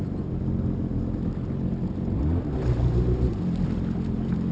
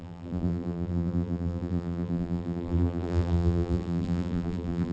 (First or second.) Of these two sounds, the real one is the first